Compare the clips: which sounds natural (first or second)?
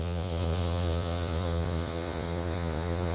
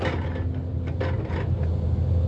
second